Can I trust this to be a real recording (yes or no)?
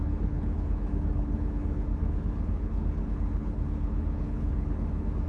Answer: no